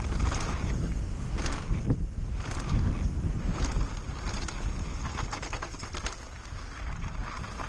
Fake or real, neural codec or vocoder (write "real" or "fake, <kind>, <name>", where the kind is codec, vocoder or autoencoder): real